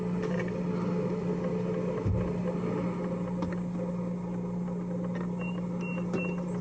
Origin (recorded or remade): recorded